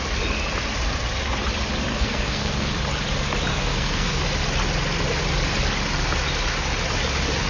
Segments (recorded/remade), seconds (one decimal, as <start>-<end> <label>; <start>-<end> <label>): 0.0-1.9 recorded; 1.9-2.7 remade; 2.7-3.5 recorded; 3.5-4.2 remade; 4.2-7.5 recorded